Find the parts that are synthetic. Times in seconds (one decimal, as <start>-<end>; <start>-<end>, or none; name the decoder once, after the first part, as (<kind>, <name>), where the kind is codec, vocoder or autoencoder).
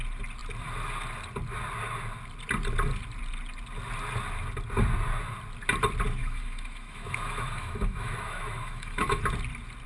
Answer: 6.2-9.2 (autoencoder, DAC-VAE)